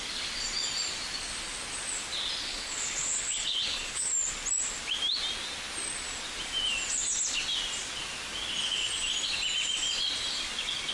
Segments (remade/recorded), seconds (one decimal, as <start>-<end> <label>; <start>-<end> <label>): 0.0-2.5 recorded; 2.5-4.1 remade; 4.1-10.9 recorded